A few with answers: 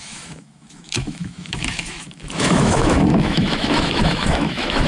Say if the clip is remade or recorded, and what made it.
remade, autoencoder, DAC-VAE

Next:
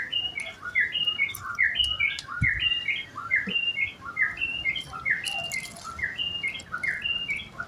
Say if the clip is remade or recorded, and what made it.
recorded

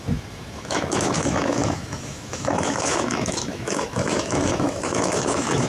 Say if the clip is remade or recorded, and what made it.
remade, autoencoder, DAC-VAE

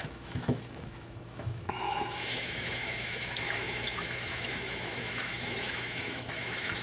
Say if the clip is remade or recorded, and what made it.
remade, autoencoder, DAC-VAE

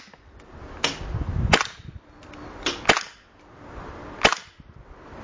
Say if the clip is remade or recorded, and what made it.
recorded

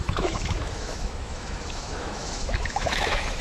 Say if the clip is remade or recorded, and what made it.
remade, autoencoder, DAC-VAE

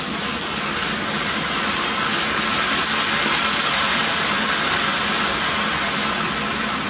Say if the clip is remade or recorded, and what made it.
recorded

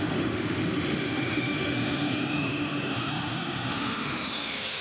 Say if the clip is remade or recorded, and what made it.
remade, autoencoder, DAC-VAE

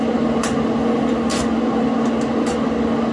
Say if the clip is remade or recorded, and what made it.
recorded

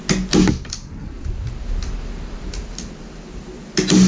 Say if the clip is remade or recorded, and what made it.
recorded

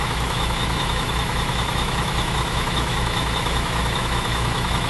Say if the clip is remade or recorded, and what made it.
remade, autoencoder, DAC-VAE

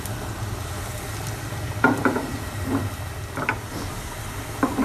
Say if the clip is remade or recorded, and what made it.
recorded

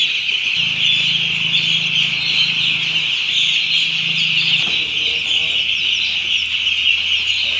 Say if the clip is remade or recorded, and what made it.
recorded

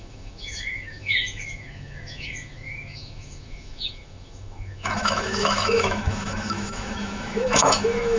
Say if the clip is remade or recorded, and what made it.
remade, autoencoder, DAC-VAE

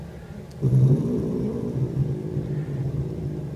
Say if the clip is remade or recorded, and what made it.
recorded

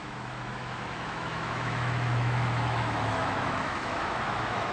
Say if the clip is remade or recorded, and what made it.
remade, autoencoder, DAC-VAE